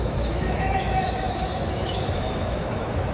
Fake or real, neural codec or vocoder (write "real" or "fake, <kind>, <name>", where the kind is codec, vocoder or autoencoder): fake, autoencoder, DAC-VAE